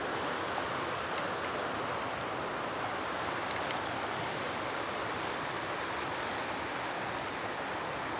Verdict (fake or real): real